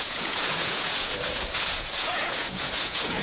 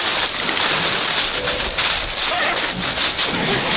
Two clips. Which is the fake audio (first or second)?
first